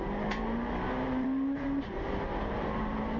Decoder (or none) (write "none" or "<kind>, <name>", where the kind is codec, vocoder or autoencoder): vocoder, BigVGAN v2